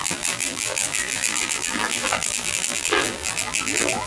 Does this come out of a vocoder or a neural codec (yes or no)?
yes